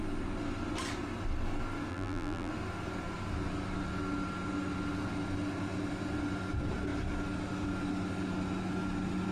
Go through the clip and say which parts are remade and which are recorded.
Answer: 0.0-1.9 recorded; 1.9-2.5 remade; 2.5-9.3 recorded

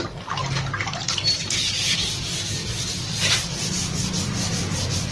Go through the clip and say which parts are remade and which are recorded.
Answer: 0.0-5.1 recorded

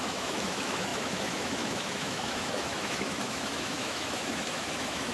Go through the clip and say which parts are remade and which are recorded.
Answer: 0.0-5.1 remade

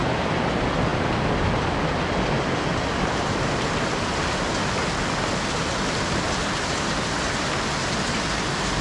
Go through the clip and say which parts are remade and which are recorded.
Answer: 0.0-8.8 recorded

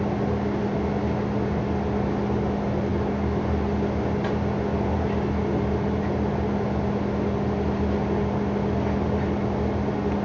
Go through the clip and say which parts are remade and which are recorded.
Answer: 0.0-10.2 recorded